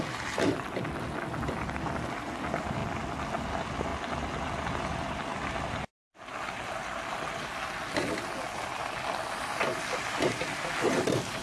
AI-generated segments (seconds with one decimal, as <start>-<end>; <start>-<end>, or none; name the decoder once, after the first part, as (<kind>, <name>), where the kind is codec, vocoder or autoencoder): none